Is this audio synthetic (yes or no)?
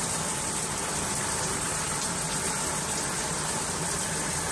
yes